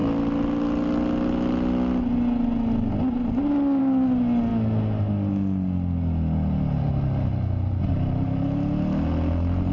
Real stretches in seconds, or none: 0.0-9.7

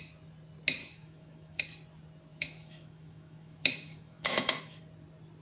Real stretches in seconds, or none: 0.0-0.8; 1.6-2.3; 4.8-5.4